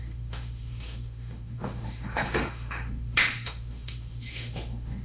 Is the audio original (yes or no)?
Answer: no